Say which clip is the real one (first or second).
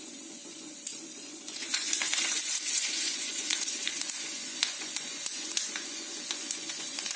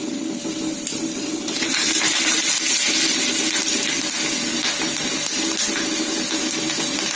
second